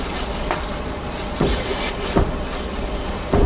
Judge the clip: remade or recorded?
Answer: remade